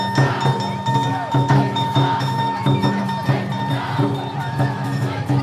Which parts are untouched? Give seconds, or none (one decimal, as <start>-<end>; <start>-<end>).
0.0-1.1; 3.0-4.4